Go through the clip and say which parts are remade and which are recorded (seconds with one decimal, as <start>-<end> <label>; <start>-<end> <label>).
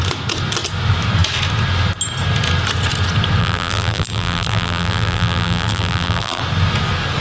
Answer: 0.0-3.4 recorded; 3.4-6.4 remade; 6.4-7.2 recorded